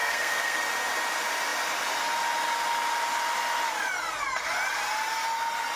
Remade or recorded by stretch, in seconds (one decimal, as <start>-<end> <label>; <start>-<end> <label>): 0.0-0.6 remade; 0.6-5.8 recorded